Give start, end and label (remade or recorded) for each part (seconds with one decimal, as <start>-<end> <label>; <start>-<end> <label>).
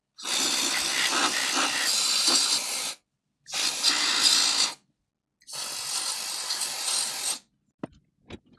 0.0-8.6 recorded